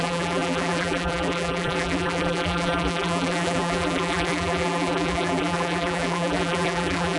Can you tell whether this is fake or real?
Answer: fake